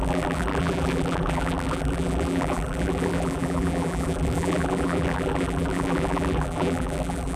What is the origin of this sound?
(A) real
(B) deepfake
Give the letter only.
B